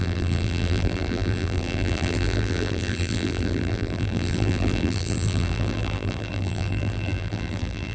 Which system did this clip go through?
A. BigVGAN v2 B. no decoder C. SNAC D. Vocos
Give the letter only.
A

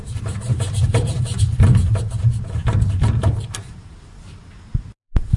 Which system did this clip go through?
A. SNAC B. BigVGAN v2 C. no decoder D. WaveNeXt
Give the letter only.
B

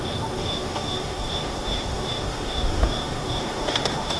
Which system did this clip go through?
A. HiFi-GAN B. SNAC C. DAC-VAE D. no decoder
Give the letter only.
C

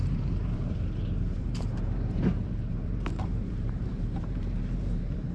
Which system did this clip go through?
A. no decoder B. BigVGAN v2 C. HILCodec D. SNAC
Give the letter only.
B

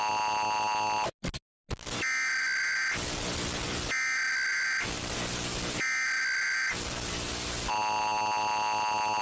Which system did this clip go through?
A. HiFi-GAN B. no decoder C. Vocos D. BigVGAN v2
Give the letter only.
B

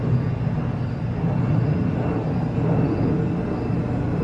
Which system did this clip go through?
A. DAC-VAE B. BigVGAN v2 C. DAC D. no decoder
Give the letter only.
D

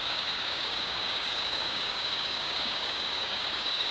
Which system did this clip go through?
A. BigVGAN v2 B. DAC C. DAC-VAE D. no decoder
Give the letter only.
B